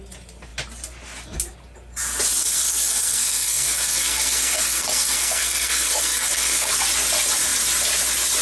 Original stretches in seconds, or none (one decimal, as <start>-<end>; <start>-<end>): 0.0-2.4; 6.7-8.4